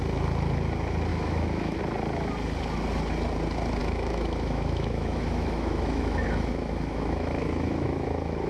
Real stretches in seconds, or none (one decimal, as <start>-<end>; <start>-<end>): 0.0-1.1; 1.8-3.8